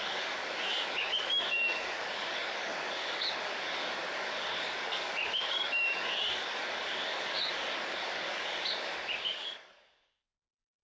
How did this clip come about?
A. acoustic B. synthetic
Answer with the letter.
B